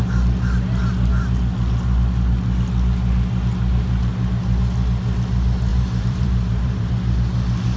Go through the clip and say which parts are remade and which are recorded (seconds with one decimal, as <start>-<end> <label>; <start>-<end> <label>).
0.0-5.7 recorded; 5.7-6.9 remade; 6.9-7.8 recorded